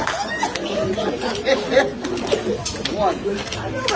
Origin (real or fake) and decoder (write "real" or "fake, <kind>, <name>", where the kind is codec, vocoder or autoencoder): real